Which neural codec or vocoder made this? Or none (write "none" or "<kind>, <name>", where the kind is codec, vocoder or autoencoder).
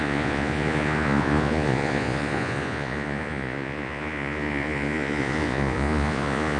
vocoder, Vocos